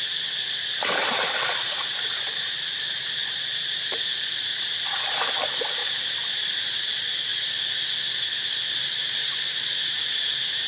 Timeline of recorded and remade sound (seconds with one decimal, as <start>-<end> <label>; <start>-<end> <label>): 0.0-7.3 remade; 7.3-9.2 recorded; 9.2-10.7 remade